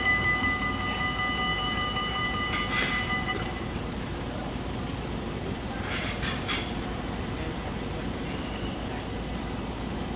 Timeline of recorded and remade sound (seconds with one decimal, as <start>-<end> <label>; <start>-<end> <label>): 0.0-1.5 recorded; 1.5-3.8 remade; 3.8-5.4 recorded; 5.4-6.8 remade; 6.8-10.2 recorded